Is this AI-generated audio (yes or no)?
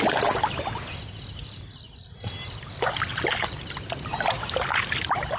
no